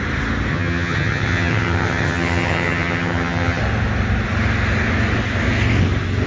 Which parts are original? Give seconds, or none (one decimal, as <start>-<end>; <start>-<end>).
0.0-0.5; 3.6-6.3